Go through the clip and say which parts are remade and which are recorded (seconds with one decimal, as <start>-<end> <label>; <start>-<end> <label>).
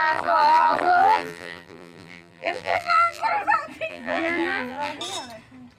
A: 0.0-3.2 remade; 3.2-3.9 recorded; 3.9-4.9 remade; 4.9-5.8 recorded